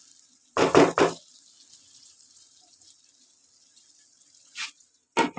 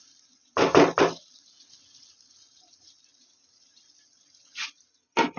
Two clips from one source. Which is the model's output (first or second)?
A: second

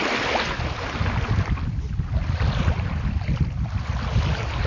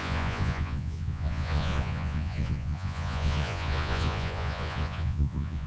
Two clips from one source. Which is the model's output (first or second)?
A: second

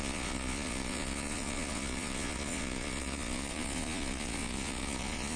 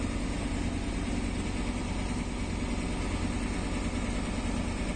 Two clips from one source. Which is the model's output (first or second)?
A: first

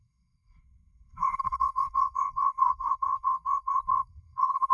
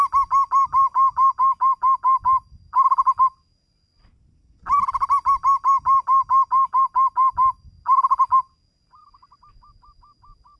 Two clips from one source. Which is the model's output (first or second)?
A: first